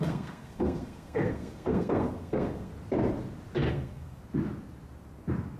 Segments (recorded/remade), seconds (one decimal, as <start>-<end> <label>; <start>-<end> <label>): 0.0-2.7 remade; 2.7-3.7 recorded; 3.7-4.2 remade; 4.2-5.6 recorded